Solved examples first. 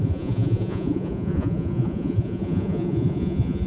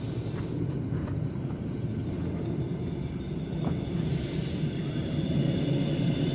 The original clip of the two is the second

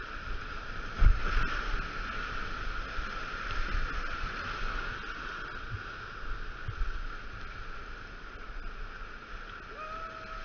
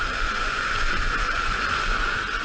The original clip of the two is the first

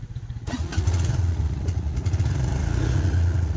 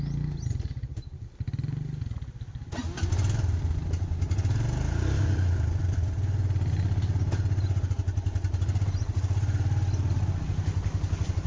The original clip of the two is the second